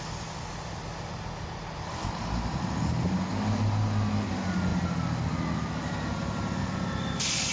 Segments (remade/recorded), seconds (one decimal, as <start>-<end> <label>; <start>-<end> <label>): 0.0-7.5 recorded